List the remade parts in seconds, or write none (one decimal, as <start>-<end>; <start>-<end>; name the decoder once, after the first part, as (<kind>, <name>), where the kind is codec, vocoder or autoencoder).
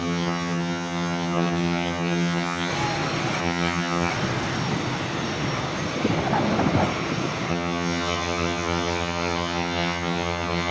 0.0-2.7 (vocoder, HiFi-GAN); 3.4-4.1; 7.5-10.7